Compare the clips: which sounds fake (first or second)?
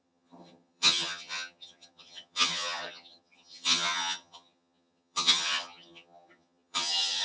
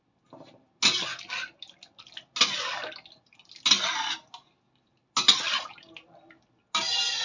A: first